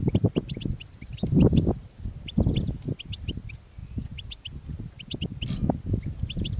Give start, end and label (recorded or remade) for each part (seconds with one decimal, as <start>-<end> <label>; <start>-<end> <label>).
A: 0.0-6.6 recorded